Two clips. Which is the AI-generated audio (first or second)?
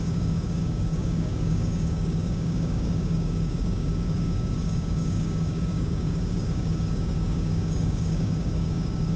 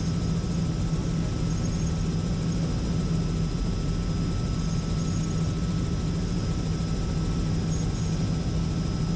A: first